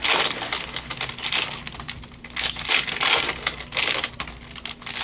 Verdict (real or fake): real